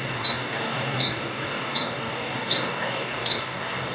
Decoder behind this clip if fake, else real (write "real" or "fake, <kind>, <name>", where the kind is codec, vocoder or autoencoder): fake, codec, DAC